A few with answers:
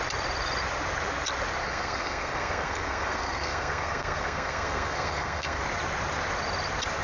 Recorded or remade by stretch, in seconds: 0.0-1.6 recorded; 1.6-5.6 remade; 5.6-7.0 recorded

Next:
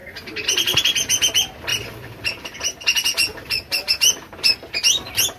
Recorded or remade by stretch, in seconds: 0.0-0.8 remade; 0.8-1.7 recorded; 1.7-2.6 remade; 2.6-3.3 recorded; 3.3-4.5 remade; 4.5-5.4 recorded

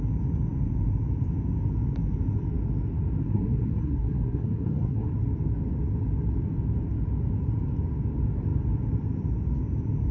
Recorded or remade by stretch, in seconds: 0.0-3.2 recorded; 3.2-5.1 remade; 5.1-10.1 recorded